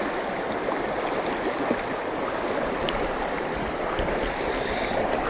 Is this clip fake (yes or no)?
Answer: no